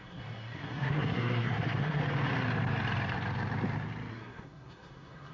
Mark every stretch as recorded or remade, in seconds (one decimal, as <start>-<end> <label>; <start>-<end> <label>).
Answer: 0.0-2.0 remade; 2.0-4.1 recorded; 4.1-5.3 remade